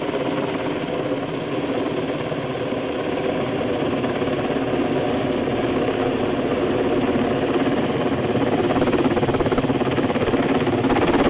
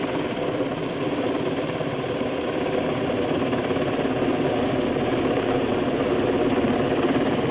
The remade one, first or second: second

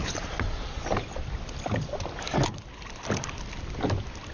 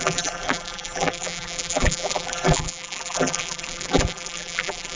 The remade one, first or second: second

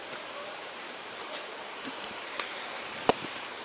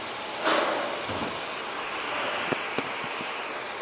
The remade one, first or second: first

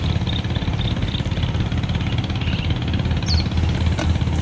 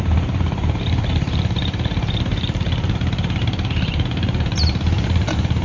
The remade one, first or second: second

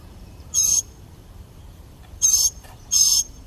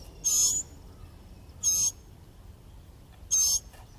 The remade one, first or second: first